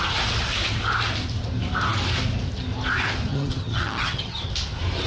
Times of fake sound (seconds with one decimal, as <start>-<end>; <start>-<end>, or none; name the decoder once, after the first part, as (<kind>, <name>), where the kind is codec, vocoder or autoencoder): 3.3-4.4 (vocoder, HiFi-GAN)